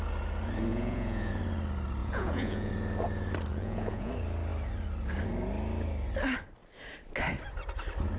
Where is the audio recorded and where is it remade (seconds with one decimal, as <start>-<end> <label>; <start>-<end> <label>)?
0.0-0.7 recorded; 0.7-1.3 remade; 1.3-2.0 recorded; 2.0-2.7 remade; 2.7-3.5 recorded; 3.5-4.1 remade; 4.1-8.2 recorded